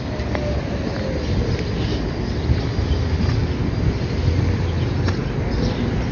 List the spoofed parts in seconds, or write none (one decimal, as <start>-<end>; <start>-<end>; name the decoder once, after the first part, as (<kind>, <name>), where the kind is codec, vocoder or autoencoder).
none